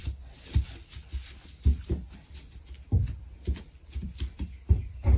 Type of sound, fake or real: real